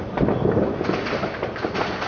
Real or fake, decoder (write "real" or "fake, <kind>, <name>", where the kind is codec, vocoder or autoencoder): real